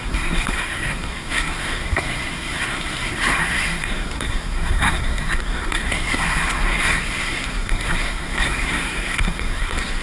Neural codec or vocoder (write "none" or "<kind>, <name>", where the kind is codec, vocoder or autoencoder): codec, SNAC